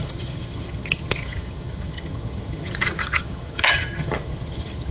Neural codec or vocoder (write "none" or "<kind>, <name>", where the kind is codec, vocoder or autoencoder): vocoder, HiFi-GAN